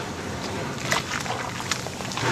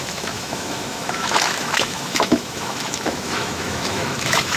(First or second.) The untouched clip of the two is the first